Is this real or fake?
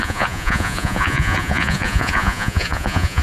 fake